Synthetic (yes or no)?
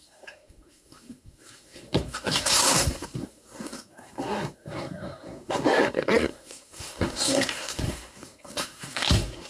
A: yes